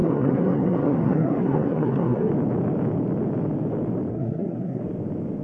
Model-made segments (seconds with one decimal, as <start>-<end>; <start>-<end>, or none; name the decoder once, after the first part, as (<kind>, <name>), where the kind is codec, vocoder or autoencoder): 0.0-2.3 (codec, SNAC); 4.1-4.8